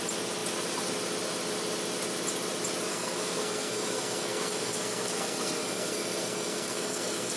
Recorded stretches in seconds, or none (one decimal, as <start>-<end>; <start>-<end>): 0.0-2.9